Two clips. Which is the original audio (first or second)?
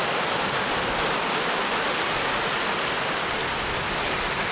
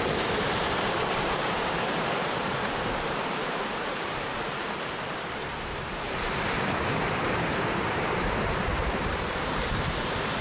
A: first